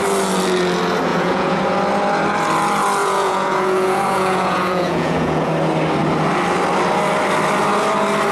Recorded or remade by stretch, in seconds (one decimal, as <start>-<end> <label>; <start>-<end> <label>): 0.0-1.1 recorded; 1.1-1.6 remade; 1.6-3.0 recorded; 3.0-5.5 remade; 5.5-8.3 recorded